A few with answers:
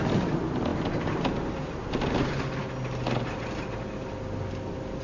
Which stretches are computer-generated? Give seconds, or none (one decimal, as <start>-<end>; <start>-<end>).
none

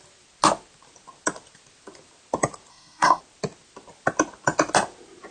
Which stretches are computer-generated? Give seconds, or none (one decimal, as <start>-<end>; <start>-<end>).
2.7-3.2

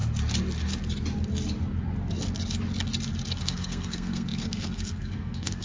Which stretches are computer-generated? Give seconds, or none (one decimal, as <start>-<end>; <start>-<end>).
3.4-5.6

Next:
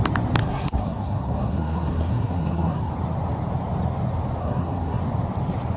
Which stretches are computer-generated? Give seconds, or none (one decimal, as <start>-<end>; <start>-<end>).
0.4-2.9; 4.4-5.0

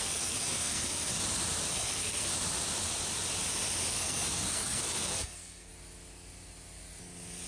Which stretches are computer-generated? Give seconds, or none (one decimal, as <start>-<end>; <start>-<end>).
0.0-1.1; 1.7-2.3; 3.9-5.7

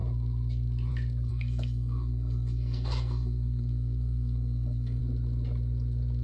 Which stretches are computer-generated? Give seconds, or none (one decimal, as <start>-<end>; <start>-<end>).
1.3-5.0

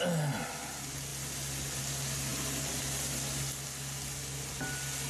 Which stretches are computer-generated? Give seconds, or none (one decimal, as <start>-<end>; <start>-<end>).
none

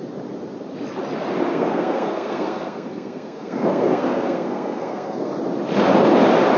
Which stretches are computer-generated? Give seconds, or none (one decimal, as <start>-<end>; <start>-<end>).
1.5-5.3